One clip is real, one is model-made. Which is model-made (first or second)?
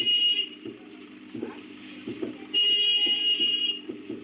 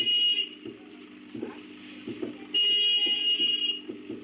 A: first